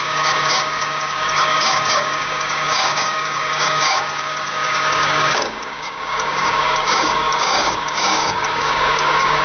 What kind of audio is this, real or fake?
fake